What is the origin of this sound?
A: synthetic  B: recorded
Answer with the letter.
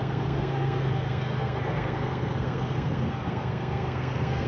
A